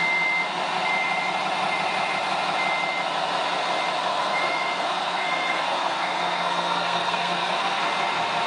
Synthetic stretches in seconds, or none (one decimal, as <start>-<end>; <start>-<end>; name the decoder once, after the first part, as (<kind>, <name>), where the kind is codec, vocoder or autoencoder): 4.1-7.8 (codec, SNAC)